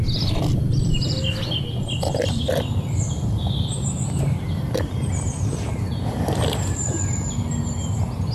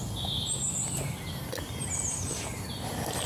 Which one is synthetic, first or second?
first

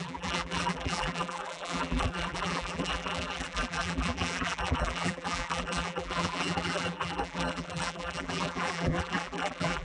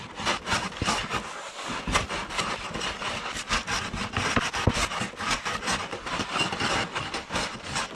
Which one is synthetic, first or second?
first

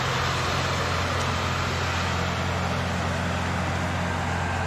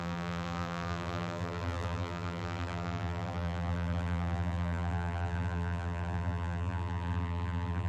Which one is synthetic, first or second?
second